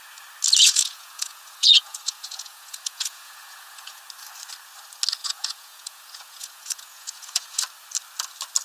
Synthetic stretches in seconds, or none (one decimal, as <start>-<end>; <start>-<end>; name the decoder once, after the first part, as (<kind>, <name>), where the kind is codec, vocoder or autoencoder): 0.6-4.0 (vocoder, Vocos); 5.2-7.6